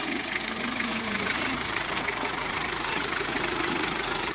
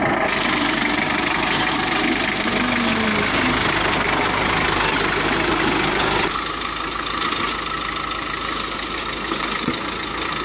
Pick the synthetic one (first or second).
first